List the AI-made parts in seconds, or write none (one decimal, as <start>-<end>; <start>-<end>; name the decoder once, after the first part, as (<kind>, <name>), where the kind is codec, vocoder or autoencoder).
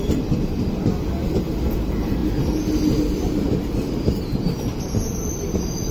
none